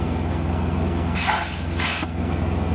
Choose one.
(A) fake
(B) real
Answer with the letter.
A